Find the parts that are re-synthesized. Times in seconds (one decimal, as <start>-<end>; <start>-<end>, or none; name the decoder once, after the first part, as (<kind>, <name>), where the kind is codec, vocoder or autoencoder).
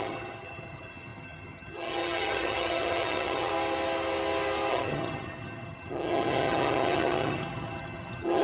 0.0-3.5 (vocoder, HiFi-GAN); 4.7-8.4